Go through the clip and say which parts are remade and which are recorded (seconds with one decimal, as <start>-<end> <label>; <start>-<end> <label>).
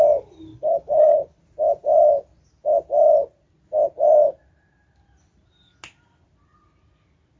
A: 0.0-0.5 recorded; 0.5-1.4 remade; 1.4-7.4 recorded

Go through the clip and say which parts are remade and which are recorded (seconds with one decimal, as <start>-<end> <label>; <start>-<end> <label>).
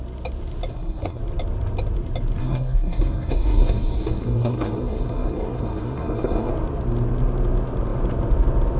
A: 0.0-0.7 recorded; 0.7-1.2 remade; 1.2-2.4 recorded; 2.4-6.5 remade; 6.5-8.8 recorded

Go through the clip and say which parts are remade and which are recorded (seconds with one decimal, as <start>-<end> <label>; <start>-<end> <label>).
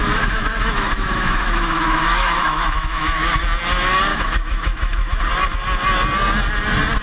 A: 0.0-3.4 remade; 3.4-4.1 recorded; 4.1-5.2 remade; 5.2-7.0 recorded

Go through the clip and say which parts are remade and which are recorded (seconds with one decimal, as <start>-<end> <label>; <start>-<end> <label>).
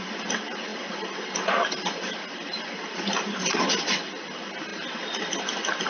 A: 0.0-5.9 recorded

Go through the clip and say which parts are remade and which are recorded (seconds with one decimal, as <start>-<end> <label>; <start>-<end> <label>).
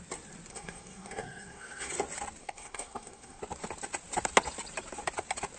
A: 0.0-0.5 recorded; 0.5-1.9 remade; 1.9-2.4 recorded; 2.4-3.4 remade; 3.4-5.6 recorded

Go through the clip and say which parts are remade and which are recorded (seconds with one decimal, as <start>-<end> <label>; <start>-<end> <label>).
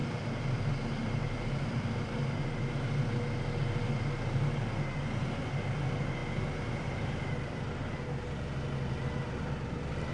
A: 0.0-0.7 remade; 0.7-1.2 recorded; 1.2-2.4 remade; 2.4-10.1 recorded